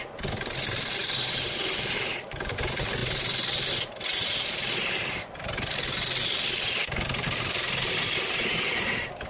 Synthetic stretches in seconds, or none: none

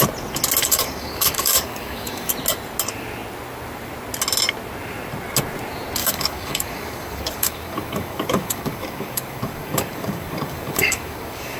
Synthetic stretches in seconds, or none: 0.6-2.3 (codec, DAC); 6.0-11.6